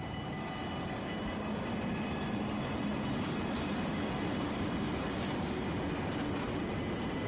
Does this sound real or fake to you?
real